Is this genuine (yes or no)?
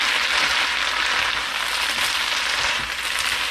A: yes